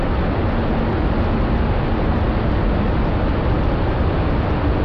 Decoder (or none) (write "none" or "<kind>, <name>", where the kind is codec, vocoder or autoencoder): none